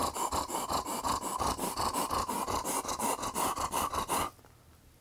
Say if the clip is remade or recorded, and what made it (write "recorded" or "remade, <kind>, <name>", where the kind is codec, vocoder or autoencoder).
recorded